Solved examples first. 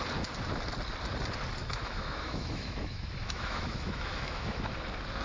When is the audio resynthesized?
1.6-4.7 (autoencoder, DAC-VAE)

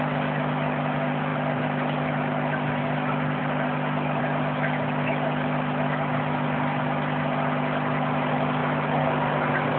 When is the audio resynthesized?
none

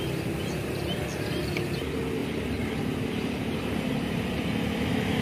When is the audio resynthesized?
2.2-4.3 (vocoder, BigVGAN v2)

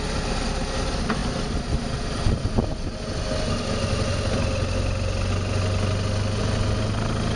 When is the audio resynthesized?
none

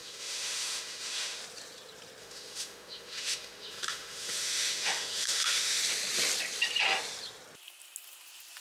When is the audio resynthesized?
0.0-1.4 (autoencoder, DAC-VAE); 2.2-5.8

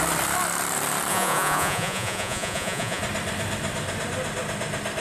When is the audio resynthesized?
1.1-3.0 (vocoder, Vocos)